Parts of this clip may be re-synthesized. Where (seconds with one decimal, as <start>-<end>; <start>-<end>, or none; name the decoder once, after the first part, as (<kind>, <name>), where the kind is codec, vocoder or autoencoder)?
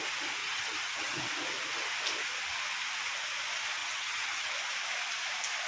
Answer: 0.4-1.2 (vocoder, HiFi-GAN); 3.8-4.5